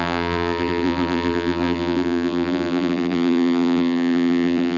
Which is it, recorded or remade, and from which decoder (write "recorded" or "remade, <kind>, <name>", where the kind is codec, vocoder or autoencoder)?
remade, vocoder, BigVGAN v2